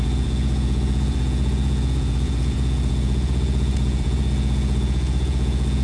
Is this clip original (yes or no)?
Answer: no